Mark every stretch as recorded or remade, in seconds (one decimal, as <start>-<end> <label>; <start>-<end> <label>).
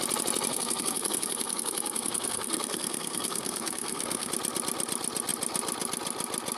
0.0-0.5 recorded; 0.5-4.3 remade; 4.3-6.6 recorded